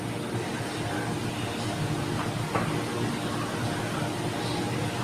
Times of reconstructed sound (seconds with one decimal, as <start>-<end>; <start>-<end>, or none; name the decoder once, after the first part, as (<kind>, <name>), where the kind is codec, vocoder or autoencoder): none